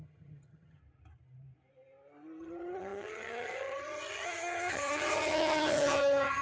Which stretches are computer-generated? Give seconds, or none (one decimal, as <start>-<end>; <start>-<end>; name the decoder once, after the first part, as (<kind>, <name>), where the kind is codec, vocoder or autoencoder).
0.0-0.8 (vocoder, HiFi-GAN); 2.4-6.4

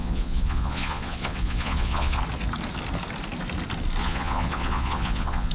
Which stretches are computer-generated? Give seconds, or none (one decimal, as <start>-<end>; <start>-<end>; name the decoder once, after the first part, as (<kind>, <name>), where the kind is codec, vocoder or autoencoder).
0.0-2.2 (vocoder, Vocos); 4.0-5.5

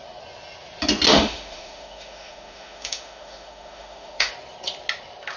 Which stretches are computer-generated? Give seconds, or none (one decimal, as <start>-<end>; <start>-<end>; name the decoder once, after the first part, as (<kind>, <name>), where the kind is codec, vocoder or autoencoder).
1.1-4.3 (autoencoder, DAC-VAE)